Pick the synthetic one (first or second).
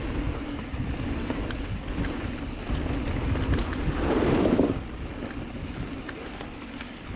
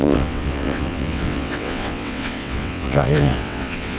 second